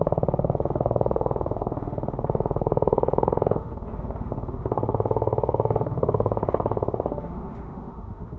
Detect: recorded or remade remade